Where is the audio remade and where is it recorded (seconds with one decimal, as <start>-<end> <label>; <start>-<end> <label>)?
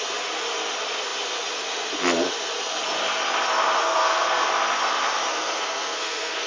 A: 0.0-3.8 recorded; 3.8-4.5 remade; 4.5-5.3 recorded; 5.3-6.5 remade